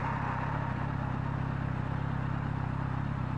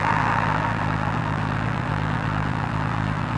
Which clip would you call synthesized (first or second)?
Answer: second